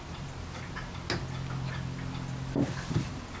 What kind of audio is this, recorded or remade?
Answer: recorded